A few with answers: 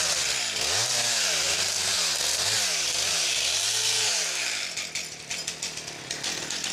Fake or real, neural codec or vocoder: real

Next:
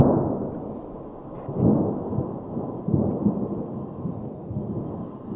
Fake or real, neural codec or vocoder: real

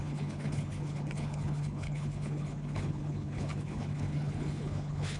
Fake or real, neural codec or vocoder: fake, codec, HILCodec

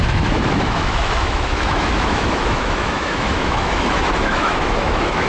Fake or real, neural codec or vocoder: fake, autoencoder, DAC-VAE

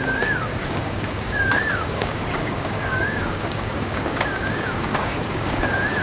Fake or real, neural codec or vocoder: fake, codec, DAC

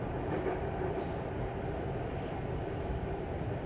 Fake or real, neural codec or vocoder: real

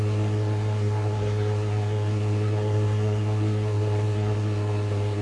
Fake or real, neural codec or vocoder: fake, codec, SNAC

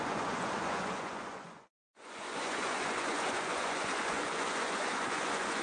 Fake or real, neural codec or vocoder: fake, vocoder, Vocos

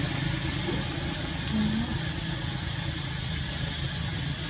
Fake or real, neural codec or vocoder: real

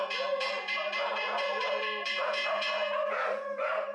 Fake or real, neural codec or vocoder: fake, vocoder, Vocos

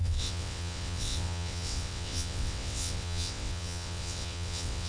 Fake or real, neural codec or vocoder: fake, vocoder, WaveNeXt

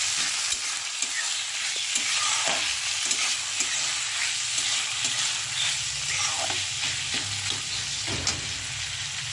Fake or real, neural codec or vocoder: real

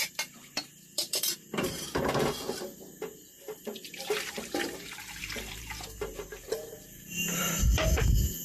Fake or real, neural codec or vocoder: fake, vocoder, BigVGAN v2